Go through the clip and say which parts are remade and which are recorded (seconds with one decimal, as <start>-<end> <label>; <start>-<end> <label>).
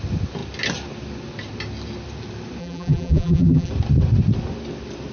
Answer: 0.0-2.6 recorded; 2.6-3.7 remade; 3.7-5.1 recorded